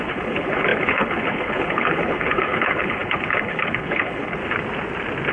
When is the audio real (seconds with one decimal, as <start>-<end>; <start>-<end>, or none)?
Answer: 4.4-5.3